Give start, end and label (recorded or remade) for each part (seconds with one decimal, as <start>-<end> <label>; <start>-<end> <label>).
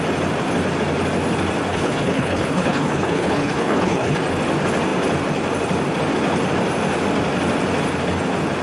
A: 0.0-1.7 recorded; 1.7-4.2 remade; 4.2-8.6 recorded